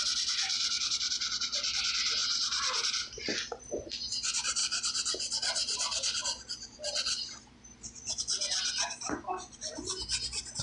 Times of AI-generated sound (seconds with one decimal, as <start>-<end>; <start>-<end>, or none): 2.2-3.8; 4.6-7.4